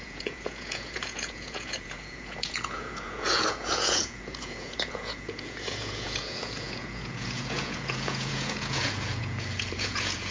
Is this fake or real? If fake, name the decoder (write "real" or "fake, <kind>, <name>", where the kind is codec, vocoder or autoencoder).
fake, vocoder, Vocos